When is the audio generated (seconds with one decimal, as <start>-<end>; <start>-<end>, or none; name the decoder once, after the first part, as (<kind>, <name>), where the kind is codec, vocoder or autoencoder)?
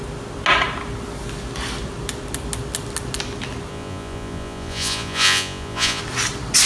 3.7-6.0 (vocoder, Vocos)